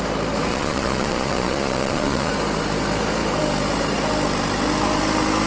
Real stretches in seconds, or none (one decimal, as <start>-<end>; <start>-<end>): 0.0-0.5; 2.3-5.5